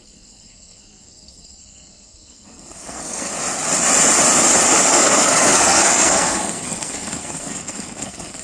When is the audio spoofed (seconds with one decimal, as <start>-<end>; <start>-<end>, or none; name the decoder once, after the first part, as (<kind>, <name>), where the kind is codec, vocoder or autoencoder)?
0.0-3.3 (codec, SNAC); 4.7-8.4

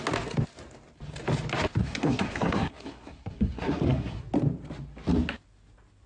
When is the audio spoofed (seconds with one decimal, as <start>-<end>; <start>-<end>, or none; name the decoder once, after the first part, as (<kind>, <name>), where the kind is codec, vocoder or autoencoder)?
1.8-4.2 (codec, SNAC)

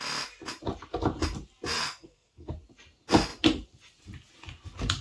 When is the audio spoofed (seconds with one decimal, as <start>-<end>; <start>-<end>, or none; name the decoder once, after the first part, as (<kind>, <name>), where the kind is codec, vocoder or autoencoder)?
1.8-2.5 (codec, SNAC)

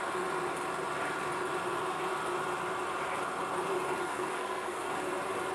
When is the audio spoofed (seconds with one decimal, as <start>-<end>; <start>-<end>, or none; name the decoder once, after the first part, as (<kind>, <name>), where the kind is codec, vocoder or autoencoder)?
4.1-4.9 (codec, SNAC)

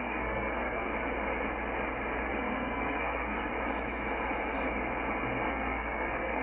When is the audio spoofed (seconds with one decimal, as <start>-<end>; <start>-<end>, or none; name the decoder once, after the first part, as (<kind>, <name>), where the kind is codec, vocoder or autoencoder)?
0.0-0.9 (codec, SNAC); 2.3-3.5; 5.5-6.4

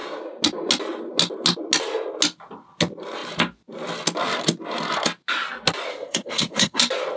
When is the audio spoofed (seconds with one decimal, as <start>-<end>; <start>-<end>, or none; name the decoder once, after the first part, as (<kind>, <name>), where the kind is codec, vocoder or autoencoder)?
5.9-6.8 (codec, SNAC)